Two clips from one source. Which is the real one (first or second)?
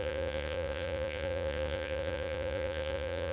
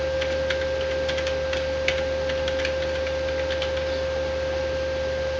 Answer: second